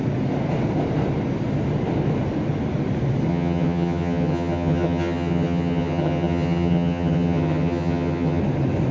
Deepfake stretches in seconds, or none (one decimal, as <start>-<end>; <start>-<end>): 3.3-8.4